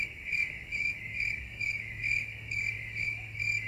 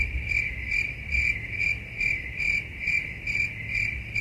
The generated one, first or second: first